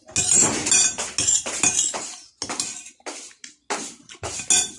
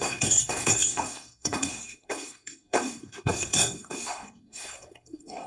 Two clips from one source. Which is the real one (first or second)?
first